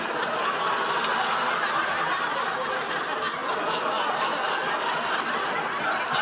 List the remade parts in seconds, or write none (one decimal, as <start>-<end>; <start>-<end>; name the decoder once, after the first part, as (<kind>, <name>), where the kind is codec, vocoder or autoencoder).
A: none